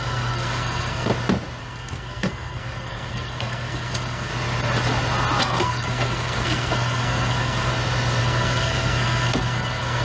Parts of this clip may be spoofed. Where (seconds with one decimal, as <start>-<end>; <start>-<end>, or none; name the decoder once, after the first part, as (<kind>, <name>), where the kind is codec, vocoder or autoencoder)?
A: 0.0-1.1 (codec, SNAC); 1.6-4.3; 5.4-7.7; 8.2-10.0